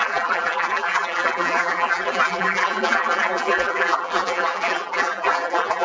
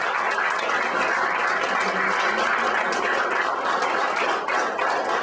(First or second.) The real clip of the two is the second